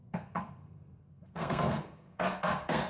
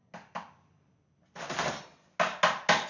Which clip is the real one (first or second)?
second